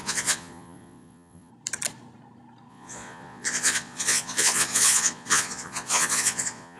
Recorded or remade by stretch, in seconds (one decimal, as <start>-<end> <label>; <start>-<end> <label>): 0.0-1.5 remade; 1.5-2.7 recorded; 2.7-6.8 remade